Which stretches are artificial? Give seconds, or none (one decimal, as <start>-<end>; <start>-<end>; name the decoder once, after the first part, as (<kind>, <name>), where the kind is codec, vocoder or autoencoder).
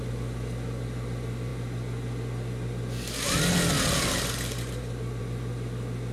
none